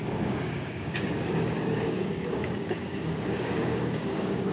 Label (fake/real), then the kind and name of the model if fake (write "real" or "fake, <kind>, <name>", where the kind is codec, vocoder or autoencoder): fake, codec, DAC